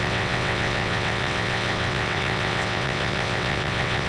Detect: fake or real fake